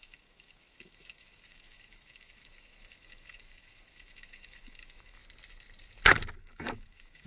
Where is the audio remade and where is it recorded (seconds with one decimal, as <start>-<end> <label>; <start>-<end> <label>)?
0.0-5.2 remade; 5.2-6.4 recorded; 6.4-7.3 remade